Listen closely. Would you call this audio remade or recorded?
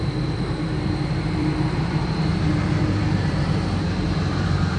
remade